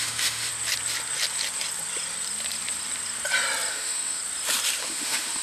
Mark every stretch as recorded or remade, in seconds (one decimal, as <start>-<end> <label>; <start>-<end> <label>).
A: 0.0-0.5 remade; 0.5-3.7 recorded; 3.7-4.2 remade; 4.2-4.8 recorded; 4.8-5.4 remade